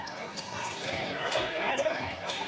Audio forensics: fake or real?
fake